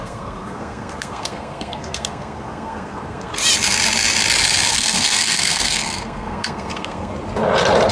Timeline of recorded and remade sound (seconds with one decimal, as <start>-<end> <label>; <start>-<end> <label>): 0.0-3.3 remade; 3.3-4.7 recorded; 4.7-7.1 remade; 7.1-7.9 recorded